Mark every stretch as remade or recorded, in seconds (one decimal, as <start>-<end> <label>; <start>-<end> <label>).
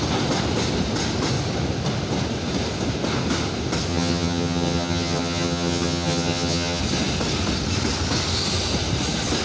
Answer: 0.0-3.9 recorded; 3.9-6.8 remade; 6.8-9.4 recorded